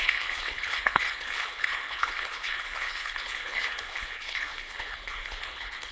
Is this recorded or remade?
remade